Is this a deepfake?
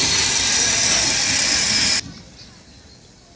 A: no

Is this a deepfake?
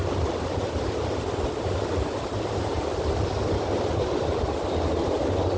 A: no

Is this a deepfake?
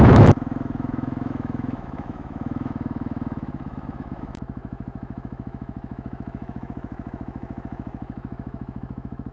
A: yes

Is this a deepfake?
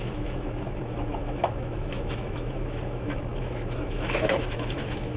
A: yes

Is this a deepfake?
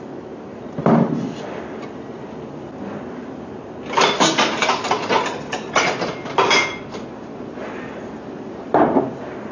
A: no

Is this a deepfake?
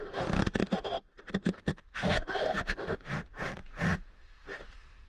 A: yes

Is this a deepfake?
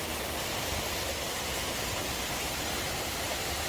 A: no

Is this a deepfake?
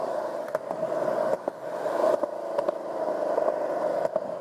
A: no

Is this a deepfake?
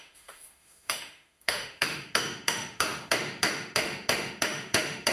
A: yes